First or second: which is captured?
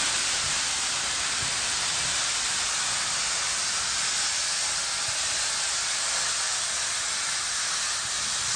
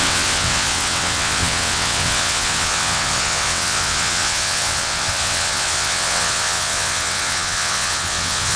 first